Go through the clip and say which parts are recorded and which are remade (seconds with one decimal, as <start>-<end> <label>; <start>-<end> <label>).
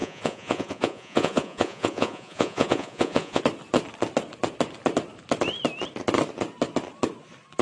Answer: 0.0-3.4 remade; 3.4-7.6 recorded